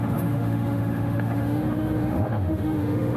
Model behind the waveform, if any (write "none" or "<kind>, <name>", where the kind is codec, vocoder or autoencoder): autoencoder, DAC-VAE